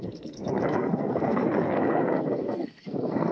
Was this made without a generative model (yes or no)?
no